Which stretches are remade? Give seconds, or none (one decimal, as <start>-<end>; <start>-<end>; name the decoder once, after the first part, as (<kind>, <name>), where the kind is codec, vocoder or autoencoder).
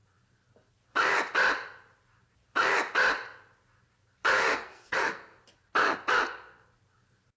4.5-5.4 (codec, SNAC)